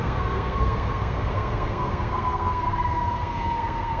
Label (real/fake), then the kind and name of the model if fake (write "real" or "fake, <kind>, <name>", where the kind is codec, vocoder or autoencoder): fake, codec, SNAC